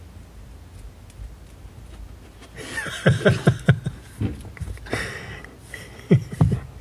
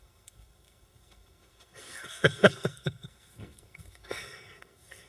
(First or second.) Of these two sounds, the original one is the first